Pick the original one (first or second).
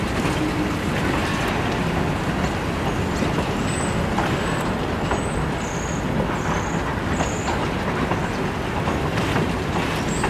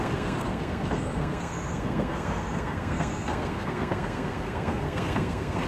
first